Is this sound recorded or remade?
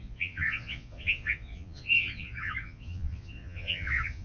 remade